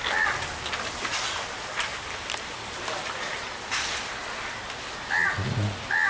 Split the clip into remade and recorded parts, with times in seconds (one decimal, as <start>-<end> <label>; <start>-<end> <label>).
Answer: 0.0-1.9 recorded; 1.9-4.7 remade; 4.7-6.1 recorded